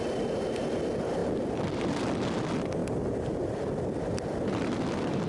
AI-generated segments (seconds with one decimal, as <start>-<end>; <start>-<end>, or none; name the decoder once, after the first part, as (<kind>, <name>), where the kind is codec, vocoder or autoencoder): 1.2-1.9 (vocoder, BigVGAN v2); 2.8-5.3